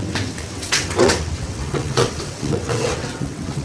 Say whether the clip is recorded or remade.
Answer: remade